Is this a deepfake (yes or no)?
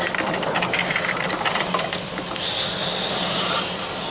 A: no